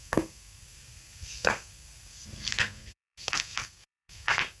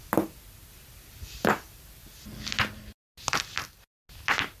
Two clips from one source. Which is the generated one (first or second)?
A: first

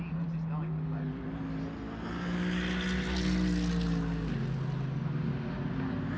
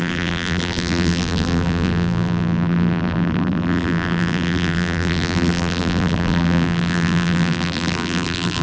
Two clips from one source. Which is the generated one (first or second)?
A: second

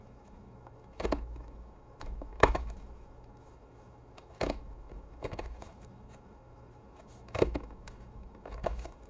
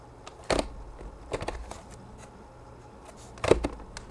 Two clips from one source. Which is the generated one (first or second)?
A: first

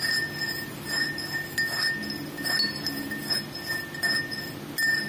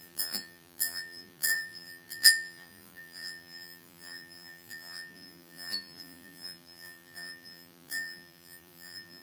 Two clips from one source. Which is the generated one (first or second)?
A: second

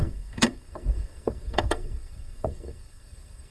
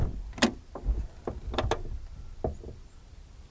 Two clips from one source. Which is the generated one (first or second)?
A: first